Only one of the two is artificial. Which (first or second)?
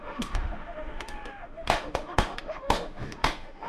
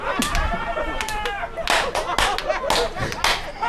first